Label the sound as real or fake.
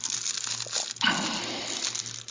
real